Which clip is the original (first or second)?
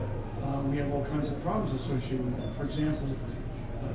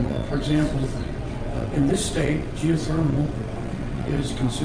first